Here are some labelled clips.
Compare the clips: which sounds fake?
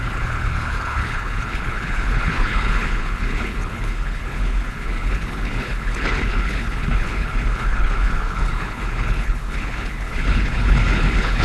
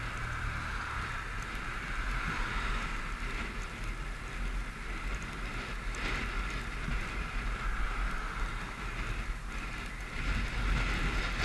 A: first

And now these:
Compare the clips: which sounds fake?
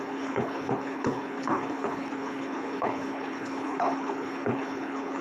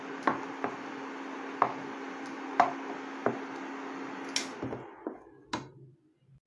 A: first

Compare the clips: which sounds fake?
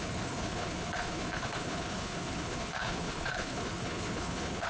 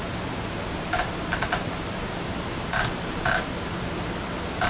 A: first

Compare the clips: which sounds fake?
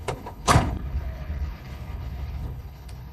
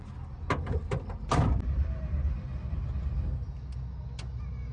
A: first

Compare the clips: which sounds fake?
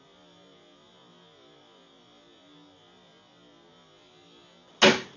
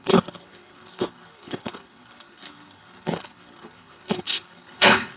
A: second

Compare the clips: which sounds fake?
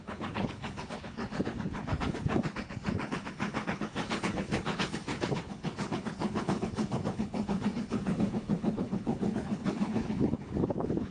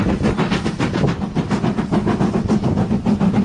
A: first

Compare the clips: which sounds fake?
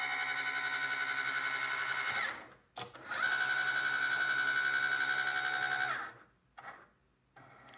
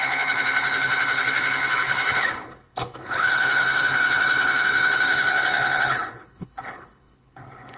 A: second